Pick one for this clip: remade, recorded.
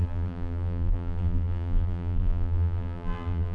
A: remade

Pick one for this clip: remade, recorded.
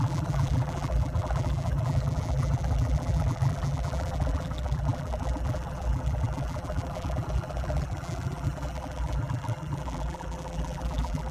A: remade